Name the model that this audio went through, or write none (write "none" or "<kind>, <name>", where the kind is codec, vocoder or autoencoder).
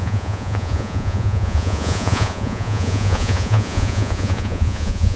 vocoder, Vocos